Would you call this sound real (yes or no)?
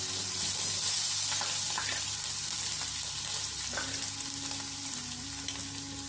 yes